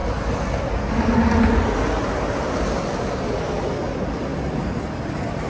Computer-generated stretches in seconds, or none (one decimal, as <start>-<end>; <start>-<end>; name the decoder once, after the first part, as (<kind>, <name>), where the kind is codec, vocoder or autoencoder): none